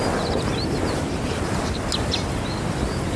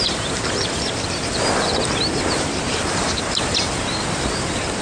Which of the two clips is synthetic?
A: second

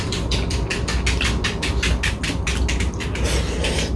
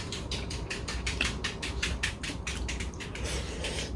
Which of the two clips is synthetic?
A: second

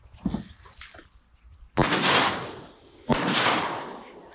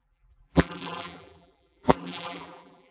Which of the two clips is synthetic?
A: second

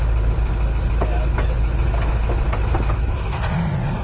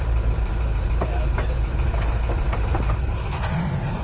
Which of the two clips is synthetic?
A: second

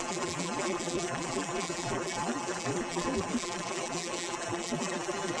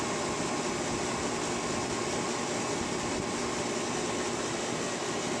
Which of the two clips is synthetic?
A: first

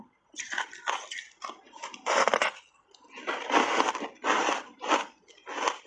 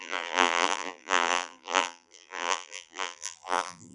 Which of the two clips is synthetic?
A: second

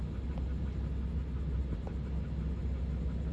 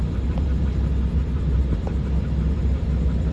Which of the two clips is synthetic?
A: second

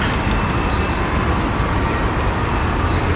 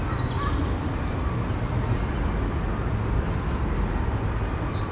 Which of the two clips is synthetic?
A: first